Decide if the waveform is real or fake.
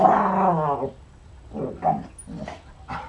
real